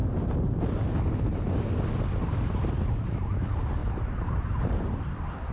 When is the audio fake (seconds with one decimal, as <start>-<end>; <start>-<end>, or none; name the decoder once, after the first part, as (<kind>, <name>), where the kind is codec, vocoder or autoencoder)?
3.8-5.1 (vocoder, BigVGAN v2)